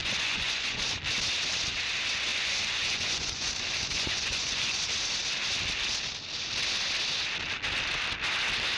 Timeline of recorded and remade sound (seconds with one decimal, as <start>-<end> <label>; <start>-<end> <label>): 0.0-1.0 remade; 1.0-2.3 recorded; 2.3-4.8 remade; 4.8-8.8 recorded